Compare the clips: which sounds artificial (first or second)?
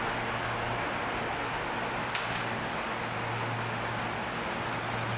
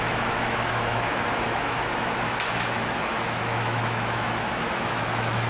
second